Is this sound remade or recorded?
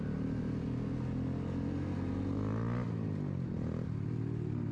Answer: recorded